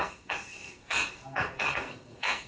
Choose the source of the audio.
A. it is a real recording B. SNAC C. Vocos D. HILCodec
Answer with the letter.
B